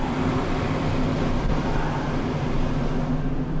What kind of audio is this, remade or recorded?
recorded